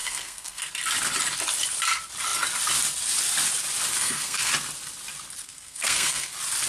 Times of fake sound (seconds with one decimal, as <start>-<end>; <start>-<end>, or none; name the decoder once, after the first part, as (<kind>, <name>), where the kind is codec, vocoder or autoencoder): 0.0-0.7 (codec, SNAC); 4.0-4.5; 5.4-6.3